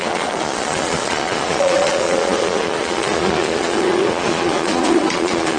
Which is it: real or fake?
fake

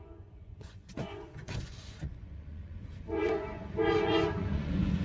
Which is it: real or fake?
fake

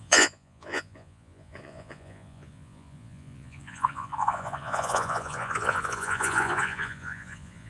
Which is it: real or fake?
fake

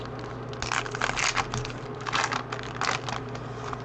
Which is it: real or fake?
real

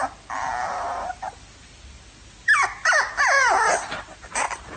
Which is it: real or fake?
real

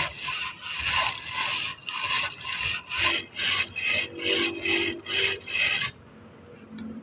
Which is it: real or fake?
real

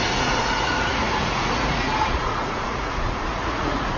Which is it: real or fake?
fake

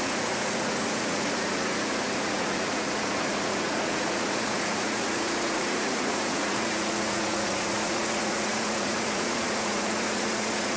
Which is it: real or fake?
fake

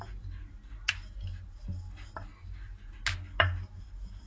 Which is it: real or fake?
real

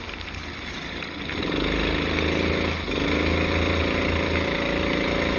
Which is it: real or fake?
real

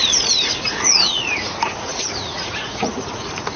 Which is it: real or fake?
fake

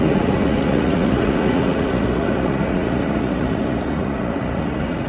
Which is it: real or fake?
fake